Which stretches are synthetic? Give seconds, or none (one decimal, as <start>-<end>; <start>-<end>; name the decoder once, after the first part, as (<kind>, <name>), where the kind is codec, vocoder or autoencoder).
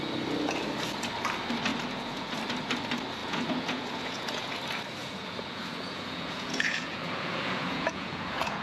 1.7-2.4 (vocoder, Vocos); 3.2-4.6; 5.0-8.6